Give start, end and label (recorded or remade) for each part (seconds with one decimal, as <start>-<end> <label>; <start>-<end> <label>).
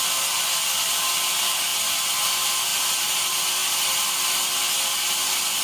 0.0-5.6 recorded